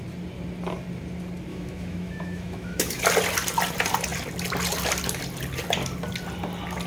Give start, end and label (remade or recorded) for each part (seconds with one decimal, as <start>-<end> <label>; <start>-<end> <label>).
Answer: 0.0-1.5 recorded; 1.5-3.0 remade; 3.0-6.9 recorded